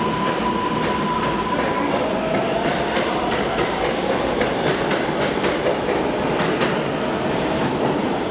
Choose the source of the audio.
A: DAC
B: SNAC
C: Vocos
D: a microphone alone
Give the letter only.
D